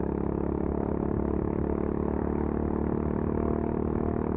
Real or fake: real